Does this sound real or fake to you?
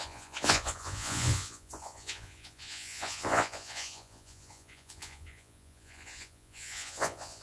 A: fake